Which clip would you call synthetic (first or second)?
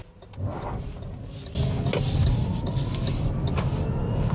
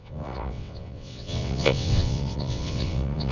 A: second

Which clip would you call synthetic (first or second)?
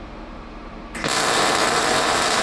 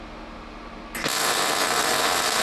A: first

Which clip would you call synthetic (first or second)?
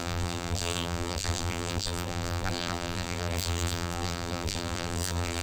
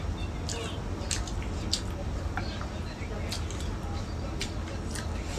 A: first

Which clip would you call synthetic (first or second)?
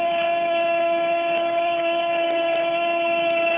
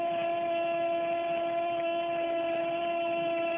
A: first